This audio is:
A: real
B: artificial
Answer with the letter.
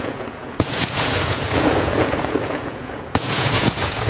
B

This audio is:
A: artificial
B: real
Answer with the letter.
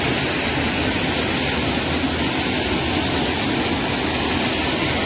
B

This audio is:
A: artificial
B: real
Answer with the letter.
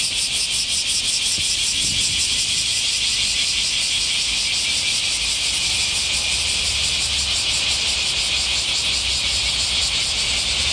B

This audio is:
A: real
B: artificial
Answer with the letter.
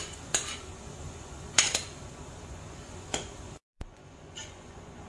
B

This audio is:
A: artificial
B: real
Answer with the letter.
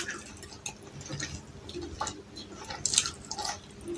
B